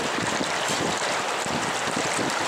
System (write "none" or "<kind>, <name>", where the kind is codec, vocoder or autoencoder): vocoder, BigVGAN v2